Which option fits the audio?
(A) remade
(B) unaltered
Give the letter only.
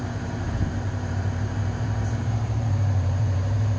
A